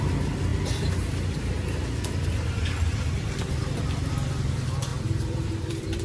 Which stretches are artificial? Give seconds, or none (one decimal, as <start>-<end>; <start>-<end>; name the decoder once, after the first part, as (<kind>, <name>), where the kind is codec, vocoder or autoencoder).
4.9-6.0 (vocoder, BigVGAN v2)